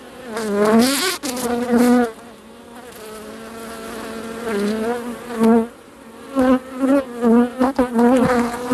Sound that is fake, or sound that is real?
real